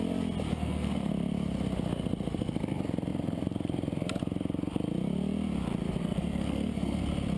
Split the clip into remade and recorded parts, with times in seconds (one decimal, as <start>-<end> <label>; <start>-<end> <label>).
0.0-0.5 recorded; 0.5-1.1 remade; 1.1-6.0 recorded; 6.0-7.0 remade; 7.0-7.4 recorded